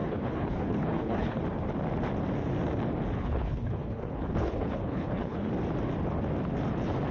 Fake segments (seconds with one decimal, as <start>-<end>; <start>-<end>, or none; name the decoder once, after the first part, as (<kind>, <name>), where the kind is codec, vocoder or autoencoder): 0.0-1.4 (codec, HILCodec); 3.2-5.5